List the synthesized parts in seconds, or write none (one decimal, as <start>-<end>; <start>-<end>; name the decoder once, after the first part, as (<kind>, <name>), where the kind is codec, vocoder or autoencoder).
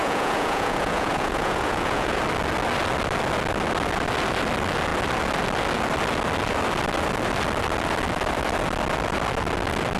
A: 0.0-2.2 (vocoder, Vocos)